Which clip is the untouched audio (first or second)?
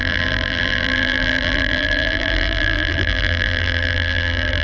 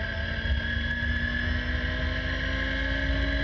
second